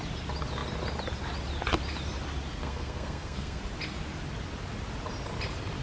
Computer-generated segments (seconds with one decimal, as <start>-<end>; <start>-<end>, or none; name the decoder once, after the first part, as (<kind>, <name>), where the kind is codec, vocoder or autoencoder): 2.5-3.6 (codec, SNAC)